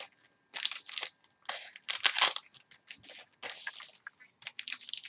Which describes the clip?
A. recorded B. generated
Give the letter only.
A